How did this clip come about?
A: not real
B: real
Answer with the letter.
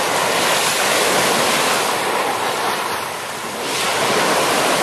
B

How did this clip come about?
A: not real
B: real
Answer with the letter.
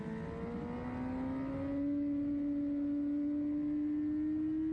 B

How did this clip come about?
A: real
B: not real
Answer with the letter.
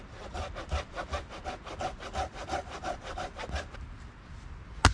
A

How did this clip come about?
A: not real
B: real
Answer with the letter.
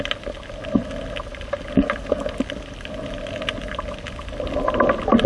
B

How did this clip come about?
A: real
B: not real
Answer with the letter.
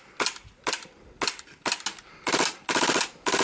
A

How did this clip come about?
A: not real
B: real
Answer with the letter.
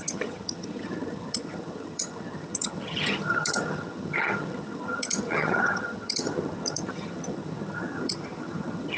A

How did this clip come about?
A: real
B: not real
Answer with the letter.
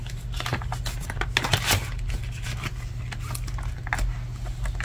A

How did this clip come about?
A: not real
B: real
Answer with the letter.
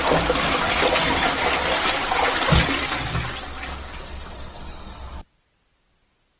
B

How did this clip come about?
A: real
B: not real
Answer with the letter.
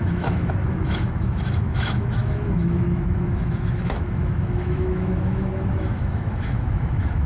B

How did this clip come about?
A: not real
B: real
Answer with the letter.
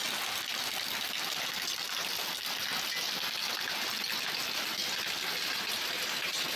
B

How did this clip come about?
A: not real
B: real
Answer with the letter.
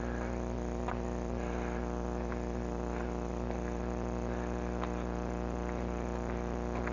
B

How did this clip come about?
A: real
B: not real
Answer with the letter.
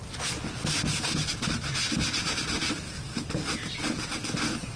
A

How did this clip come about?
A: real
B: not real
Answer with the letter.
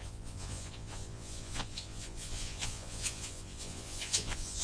B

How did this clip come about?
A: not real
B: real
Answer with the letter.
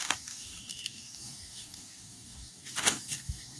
A